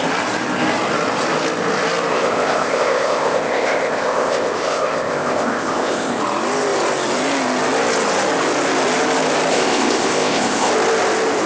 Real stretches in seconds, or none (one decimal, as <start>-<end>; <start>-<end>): 0.0-2.1; 6.2-9.5; 10.7-11.5